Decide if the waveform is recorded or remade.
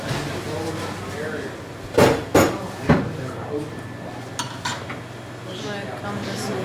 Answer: recorded